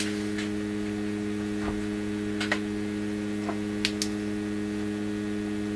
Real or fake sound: real